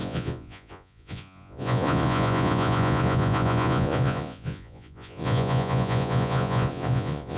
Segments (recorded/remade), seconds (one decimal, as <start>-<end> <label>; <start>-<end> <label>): 0.0-7.4 remade